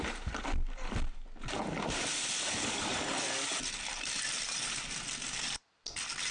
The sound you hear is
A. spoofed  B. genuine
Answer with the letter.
B